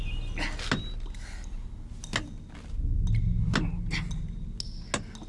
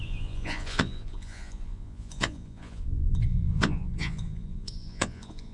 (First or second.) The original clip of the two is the first